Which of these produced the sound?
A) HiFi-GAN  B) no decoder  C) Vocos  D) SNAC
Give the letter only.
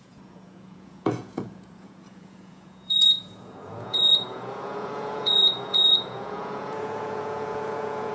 C